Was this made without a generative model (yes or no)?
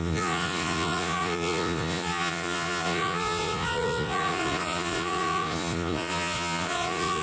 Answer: no